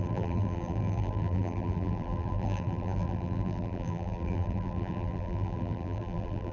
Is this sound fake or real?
fake